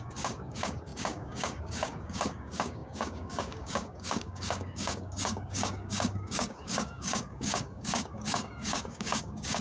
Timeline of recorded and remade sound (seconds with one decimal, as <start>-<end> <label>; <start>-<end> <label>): 0.0-9.6 remade